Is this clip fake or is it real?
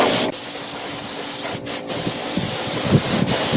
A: real